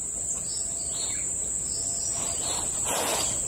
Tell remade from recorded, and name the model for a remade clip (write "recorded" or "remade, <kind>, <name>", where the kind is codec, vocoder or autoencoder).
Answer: recorded